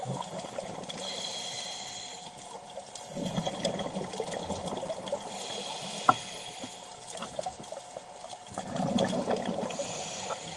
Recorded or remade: recorded